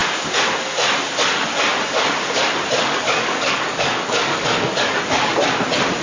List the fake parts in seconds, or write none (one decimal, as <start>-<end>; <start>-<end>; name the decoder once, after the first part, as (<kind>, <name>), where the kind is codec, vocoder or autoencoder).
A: 2.8-5.3 (codec, DAC)

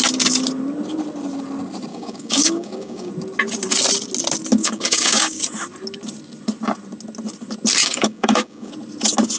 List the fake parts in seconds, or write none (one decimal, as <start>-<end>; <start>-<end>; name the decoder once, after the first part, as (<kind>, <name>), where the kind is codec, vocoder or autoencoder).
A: 1.9-3.1 (codec, DAC); 4.6-5.4; 7.8-8.7